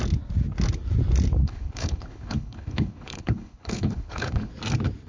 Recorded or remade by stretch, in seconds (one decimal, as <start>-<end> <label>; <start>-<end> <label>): 0.0-1.4 recorded; 1.4-4.5 remade; 4.5-5.1 recorded